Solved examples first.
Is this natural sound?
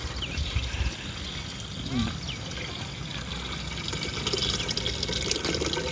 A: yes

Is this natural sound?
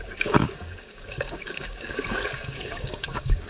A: no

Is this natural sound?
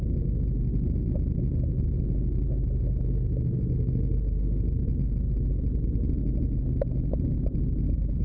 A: yes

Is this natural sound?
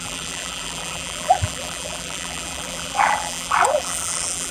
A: no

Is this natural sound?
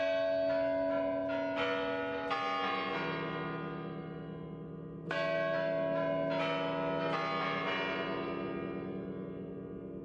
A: yes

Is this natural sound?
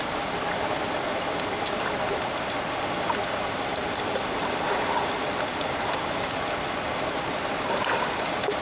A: yes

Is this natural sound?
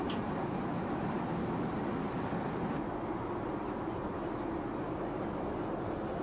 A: yes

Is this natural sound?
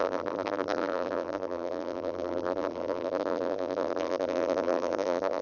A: no